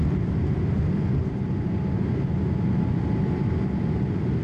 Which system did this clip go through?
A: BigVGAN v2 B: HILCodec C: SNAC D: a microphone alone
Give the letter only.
D